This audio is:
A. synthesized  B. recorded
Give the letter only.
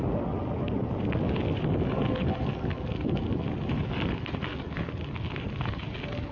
B